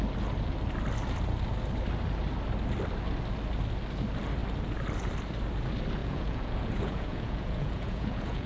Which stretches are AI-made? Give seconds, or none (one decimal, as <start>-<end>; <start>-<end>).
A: 6.0-8.5